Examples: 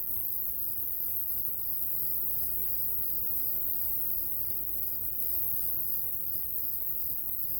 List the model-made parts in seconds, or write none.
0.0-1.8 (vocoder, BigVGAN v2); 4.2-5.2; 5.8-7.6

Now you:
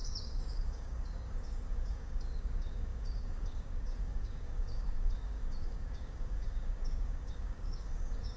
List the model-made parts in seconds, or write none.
0.0-8.4 (codec, DAC)

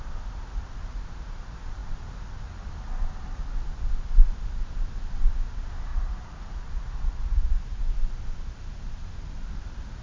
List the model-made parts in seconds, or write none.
5.9-7.8 (vocoder, Vocos)